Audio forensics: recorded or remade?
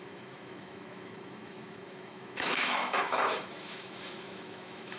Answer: remade